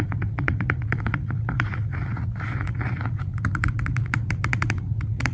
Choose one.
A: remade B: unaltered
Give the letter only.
A